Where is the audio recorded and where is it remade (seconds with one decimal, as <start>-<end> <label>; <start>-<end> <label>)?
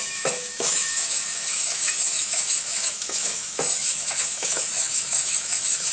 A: 0.0-5.9 remade